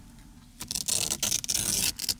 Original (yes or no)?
yes